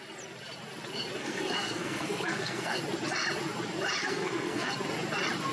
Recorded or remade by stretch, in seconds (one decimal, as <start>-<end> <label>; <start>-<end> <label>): 0.0-1.2 recorded; 1.2-2.8 remade; 2.8-4.0 recorded; 4.0-4.7 remade; 4.7-5.5 recorded